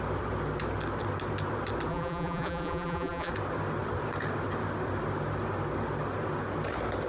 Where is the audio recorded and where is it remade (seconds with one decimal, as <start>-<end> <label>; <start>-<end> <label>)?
0.0-1.9 recorded; 1.9-3.3 remade; 3.3-7.1 recorded